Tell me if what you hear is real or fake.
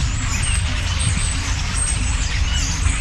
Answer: real